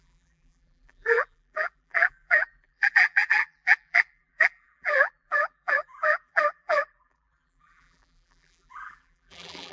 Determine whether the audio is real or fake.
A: fake